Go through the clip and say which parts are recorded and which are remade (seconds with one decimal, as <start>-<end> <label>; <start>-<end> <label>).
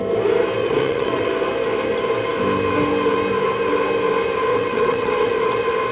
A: 0.0-0.6 recorded; 0.6-1.3 remade; 1.3-4.5 recorded; 4.5-5.3 remade; 5.3-5.9 recorded